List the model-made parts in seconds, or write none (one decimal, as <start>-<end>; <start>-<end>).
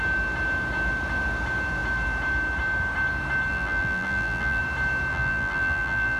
3.5-4.6; 5.1-6.2